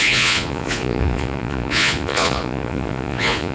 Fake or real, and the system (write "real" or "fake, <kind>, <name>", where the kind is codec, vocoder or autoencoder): fake, vocoder, Vocos